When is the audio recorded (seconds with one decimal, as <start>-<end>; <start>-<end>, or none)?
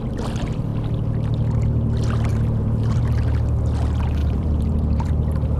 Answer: 0.0-2.3; 3.0-4.2; 5.1-5.6